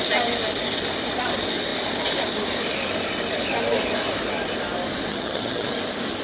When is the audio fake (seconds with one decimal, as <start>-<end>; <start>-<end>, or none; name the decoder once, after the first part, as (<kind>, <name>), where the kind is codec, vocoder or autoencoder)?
5.1-5.8 (vocoder, HiFi-GAN)

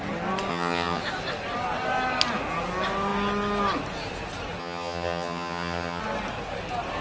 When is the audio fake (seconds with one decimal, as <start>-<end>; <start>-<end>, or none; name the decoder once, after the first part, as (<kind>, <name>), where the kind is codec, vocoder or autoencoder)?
0.5-1.0 (vocoder, HiFi-GAN); 4.6-6.0

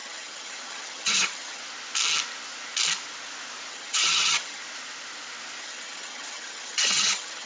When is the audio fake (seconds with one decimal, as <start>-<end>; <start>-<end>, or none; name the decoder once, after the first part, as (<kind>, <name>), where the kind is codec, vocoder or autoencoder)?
0.0-1.6 (vocoder, HiFi-GAN); 3.7-4.6; 5.6-7.5

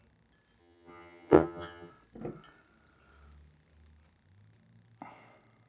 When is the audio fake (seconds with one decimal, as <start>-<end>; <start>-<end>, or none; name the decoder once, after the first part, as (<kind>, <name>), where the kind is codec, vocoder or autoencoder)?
0.6-1.9 (vocoder, HiFi-GAN)

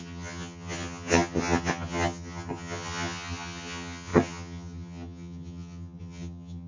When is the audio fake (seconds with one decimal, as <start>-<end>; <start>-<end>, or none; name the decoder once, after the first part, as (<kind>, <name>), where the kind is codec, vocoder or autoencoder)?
0.0-6.7 (vocoder, HiFi-GAN)

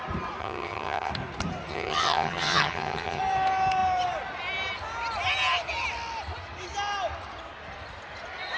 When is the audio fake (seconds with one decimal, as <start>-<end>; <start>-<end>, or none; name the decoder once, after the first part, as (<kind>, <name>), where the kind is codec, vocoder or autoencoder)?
0.4-1.1 (vocoder, HiFi-GAN); 1.7-3.2

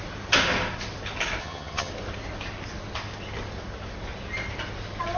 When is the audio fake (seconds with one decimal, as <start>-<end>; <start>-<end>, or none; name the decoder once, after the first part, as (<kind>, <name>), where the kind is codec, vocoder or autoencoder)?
1.4-1.9 (vocoder, HiFi-GAN)

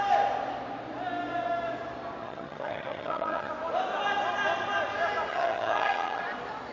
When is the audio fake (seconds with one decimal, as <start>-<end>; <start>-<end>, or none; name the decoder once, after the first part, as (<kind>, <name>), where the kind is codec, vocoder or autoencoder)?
2.2-3.5 (vocoder, HiFi-GAN); 5.3-6.2